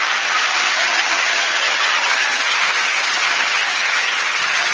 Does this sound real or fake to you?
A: fake